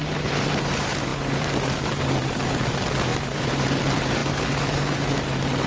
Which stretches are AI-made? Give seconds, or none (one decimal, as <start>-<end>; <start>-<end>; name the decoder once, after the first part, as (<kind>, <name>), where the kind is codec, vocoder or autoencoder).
0.0-5.7 (vocoder, BigVGAN v2)